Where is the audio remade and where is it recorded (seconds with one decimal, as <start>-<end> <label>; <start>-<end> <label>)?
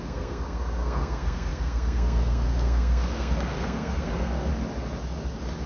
0.0-4.5 remade; 4.5-5.7 recorded